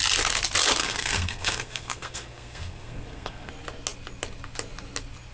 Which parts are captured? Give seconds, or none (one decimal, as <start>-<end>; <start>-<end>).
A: 0.0-0.8; 3.5-5.3